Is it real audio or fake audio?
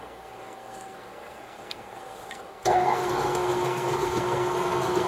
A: fake